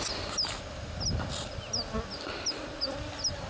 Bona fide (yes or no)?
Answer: yes